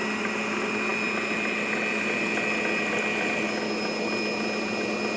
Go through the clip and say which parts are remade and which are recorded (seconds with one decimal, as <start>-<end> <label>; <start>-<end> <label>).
0.0-5.2 recorded